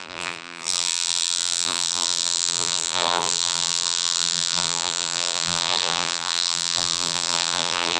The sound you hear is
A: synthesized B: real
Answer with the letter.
A